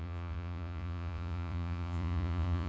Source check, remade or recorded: remade